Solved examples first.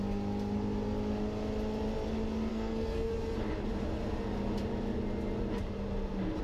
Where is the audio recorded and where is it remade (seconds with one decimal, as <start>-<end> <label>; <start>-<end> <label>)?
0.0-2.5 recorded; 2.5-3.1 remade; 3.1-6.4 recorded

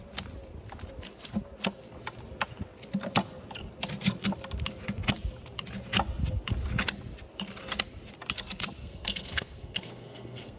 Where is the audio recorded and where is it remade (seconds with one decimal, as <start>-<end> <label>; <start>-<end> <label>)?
0.0-8.8 recorded; 8.8-10.6 remade

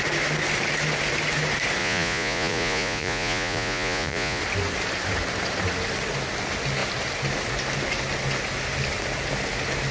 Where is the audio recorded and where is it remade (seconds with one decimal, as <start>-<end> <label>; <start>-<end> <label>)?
0.0-1.8 recorded; 1.8-4.4 remade; 4.4-9.9 recorded

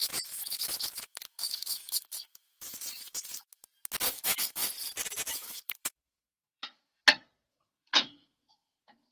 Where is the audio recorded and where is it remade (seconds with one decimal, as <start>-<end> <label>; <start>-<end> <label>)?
0.0-3.6 remade; 3.6-4.1 recorded; 4.1-4.6 remade; 4.6-5.3 recorded; 5.3-7.0 remade; 7.0-7.5 recorded; 7.5-9.1 remade

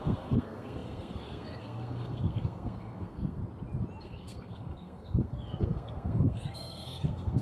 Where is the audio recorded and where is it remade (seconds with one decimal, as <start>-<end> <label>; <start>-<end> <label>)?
0.0-3.4 remade; 3.4-4.0 recorded; 4.0-7.4 remade